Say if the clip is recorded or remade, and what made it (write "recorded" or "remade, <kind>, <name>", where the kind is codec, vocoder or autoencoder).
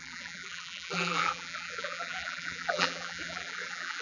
remade, vocoder, BigVGAN v2